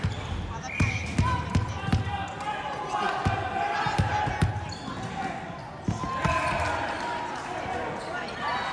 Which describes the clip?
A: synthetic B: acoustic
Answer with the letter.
B